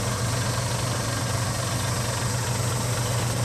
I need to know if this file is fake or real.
real